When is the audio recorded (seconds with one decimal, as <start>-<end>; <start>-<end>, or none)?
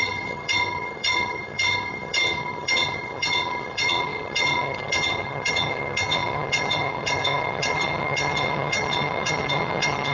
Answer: none